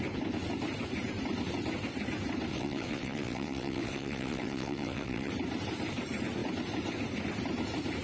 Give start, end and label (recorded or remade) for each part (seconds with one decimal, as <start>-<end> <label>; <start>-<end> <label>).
0.0-2.5 recorded; 2.5-5.3 remade; 5.3-8.0 recorded